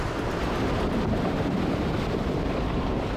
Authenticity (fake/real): real